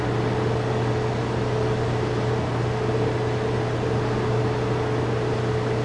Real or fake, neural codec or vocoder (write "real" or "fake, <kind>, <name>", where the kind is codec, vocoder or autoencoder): real